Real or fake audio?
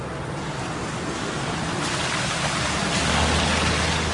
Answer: real